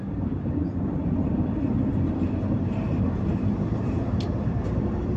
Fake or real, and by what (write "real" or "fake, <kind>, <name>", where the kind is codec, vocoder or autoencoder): fake, vocoder, BigVGAN v2